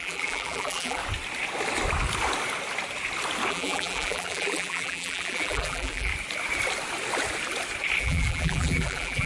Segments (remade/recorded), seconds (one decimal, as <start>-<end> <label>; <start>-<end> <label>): 0.0-1.0 remade; 1.0-3.5 recorded; 3.5-6.1 remade; 6.1-8.0 recorded; 8.0-9.3 remade